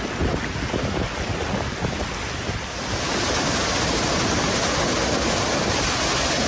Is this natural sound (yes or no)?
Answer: yes